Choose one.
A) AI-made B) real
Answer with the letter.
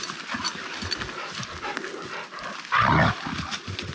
A